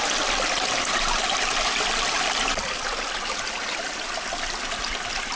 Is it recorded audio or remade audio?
recorded